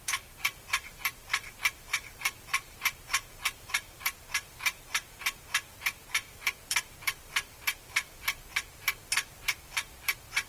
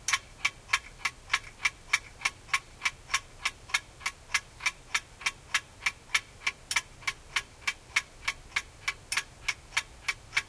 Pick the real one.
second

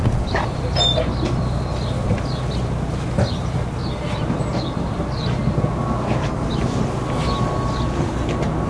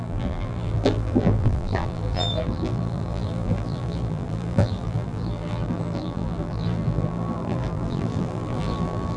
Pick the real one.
first